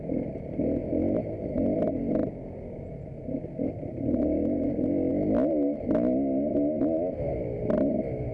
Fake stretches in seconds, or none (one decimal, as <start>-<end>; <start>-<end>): none